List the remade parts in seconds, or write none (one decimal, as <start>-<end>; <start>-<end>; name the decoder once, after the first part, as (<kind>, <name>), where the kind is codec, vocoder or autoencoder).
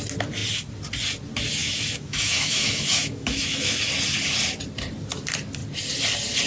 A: 1.6-3.8 (autoencoder, DAC-VAE)